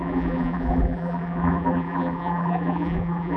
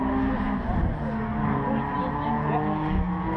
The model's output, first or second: first